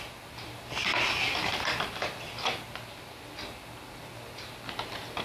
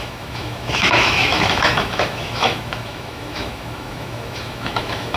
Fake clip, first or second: second